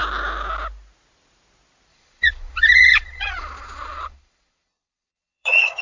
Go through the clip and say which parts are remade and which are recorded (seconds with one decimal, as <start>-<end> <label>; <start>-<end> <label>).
0.0-1.9 recorded; 1.9-5.8 remade